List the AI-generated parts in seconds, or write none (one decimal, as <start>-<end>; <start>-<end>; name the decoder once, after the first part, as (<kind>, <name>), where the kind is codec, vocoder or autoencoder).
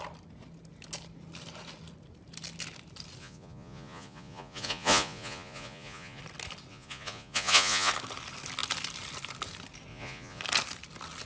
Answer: 3.2-6.2 (vocoder, Vocos); 6.7-7.9; 9.9-10.4